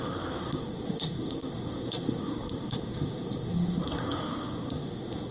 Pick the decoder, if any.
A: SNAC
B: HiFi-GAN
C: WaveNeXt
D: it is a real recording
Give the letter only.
A